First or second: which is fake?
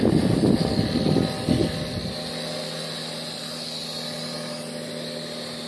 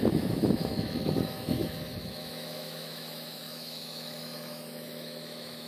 second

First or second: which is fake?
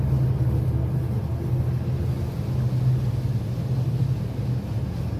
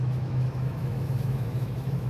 second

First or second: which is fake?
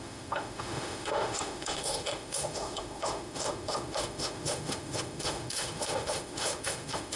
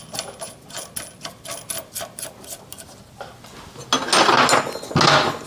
first